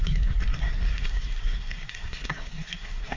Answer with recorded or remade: remade